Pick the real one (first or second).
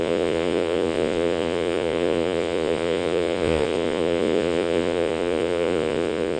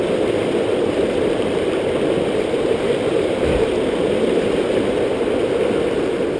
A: second